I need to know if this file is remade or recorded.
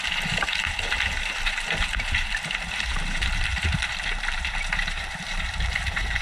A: remade